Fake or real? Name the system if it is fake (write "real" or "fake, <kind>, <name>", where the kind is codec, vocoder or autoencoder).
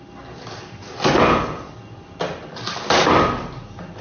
real